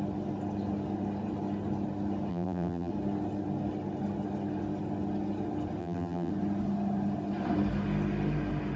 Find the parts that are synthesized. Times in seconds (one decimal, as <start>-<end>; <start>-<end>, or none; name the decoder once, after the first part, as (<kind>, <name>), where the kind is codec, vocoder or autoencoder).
2.3-2.9 (vocoder, BigVGAN v2); 5.8-6.3